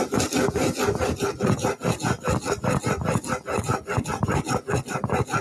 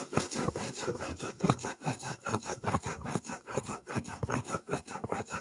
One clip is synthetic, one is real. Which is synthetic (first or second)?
second